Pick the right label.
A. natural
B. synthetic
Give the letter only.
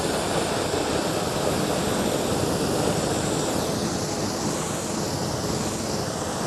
A